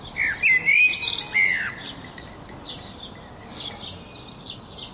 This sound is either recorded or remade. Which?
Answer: recorded